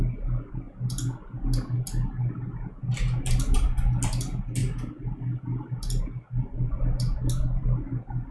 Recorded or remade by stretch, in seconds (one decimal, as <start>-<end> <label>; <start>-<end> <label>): 0.0-8.3 recorded